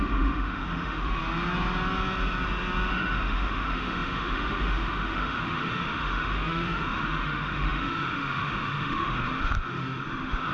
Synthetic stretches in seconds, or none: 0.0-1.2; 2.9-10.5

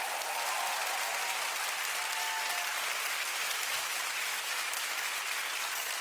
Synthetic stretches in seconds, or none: 3.3-5.1

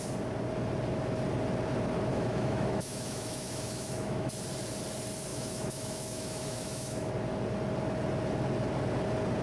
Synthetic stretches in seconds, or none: 2.1-4.3; 5.3-7.1